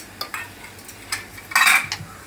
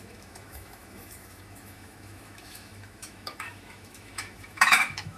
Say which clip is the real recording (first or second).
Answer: first